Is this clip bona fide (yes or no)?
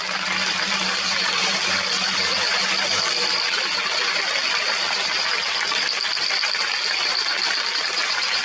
yes